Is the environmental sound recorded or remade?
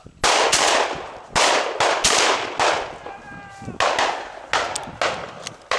recorded